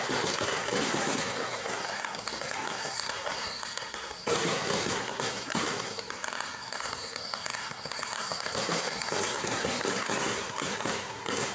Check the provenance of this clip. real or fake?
fake